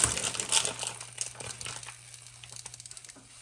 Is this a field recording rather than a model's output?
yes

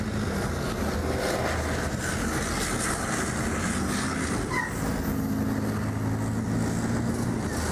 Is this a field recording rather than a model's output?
yes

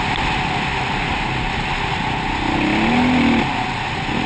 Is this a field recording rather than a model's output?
yes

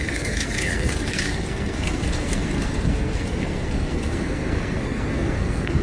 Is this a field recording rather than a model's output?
no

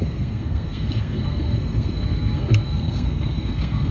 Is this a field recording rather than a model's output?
no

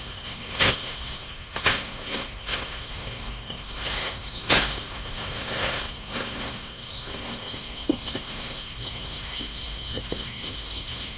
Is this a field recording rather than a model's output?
no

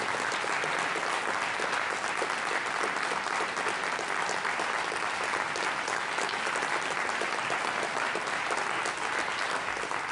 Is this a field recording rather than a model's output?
yes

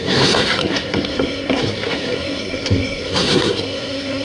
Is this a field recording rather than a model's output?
no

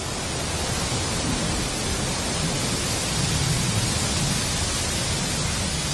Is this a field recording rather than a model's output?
yes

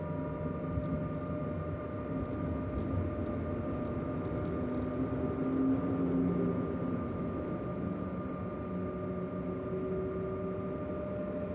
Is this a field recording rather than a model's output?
yes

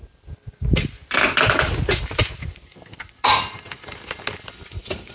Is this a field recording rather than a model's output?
yes